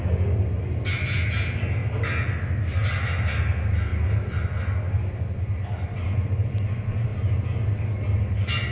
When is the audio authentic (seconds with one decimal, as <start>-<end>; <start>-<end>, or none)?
0.0-8.7